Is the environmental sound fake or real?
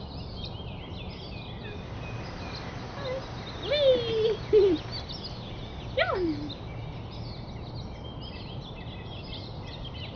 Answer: real